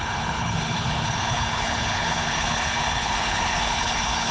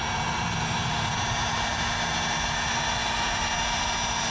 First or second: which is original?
second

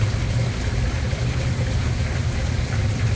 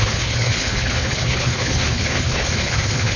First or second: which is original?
first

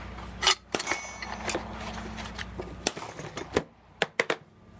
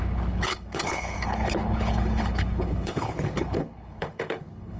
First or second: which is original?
first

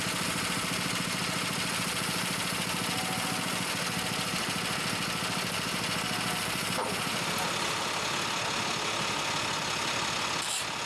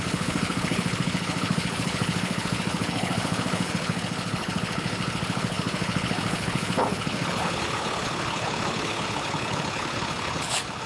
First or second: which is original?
first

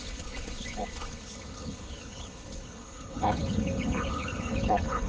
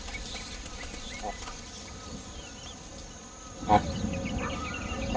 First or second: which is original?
second